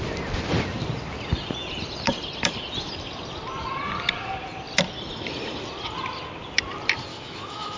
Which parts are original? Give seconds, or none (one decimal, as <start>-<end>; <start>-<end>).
0.0-7.1